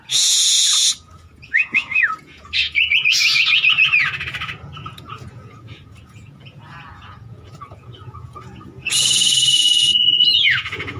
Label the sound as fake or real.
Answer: fake